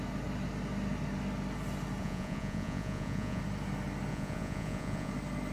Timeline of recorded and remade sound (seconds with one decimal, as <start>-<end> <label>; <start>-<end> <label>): 0.0-2.0 recorded; 2.0-3.4 remade; 3.4-4.1 recorded; 4.1-5.1 remade; 5.1-5.5 recorded